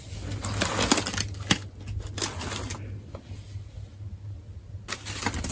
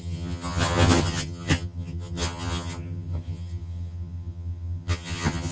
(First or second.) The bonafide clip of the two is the first